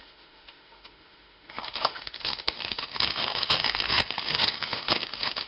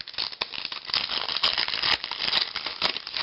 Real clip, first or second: second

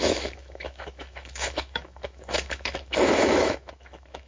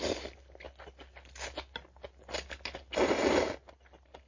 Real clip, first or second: second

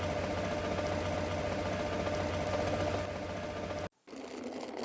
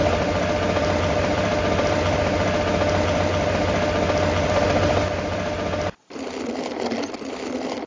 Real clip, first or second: first